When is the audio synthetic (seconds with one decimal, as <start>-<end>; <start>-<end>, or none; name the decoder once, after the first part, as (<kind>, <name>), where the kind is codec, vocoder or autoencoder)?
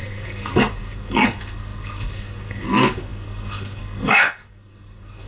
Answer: 0.0-5.3 (codec, SNAC)